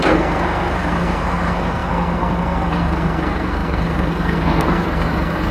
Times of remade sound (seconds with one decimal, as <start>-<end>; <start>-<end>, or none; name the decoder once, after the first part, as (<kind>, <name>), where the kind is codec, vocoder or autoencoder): 0.0-5.5 (codec, SNAC)